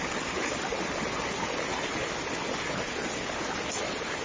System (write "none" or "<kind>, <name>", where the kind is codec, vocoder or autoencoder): none